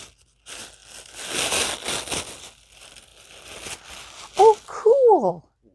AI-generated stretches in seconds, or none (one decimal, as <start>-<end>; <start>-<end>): none